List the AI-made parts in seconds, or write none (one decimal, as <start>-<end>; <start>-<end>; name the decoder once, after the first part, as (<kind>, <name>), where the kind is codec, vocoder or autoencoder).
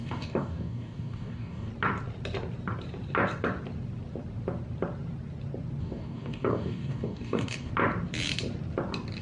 0.0-1.7 (codec, DAC); 5.8-7.7